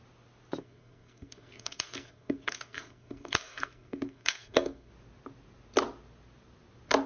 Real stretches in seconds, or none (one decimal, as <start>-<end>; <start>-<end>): 0.0-0.6; 4.9-7.1